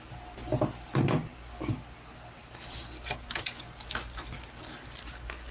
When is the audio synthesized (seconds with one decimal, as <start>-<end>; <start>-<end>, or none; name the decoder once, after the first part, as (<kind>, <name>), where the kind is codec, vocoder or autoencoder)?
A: 2.4-2.9 (vocoder, BigVGAN v2)